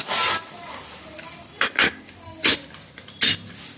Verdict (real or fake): real